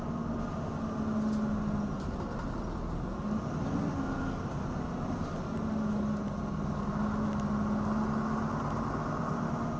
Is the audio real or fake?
real